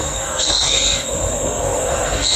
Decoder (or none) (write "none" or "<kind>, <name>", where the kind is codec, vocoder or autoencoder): codec, SNAC